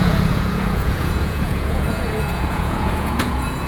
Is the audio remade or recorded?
remade